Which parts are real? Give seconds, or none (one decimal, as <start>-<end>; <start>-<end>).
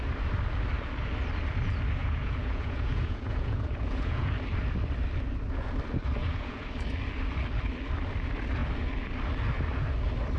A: 0.0-2.0; 4.3-6.2; 6.7-10.4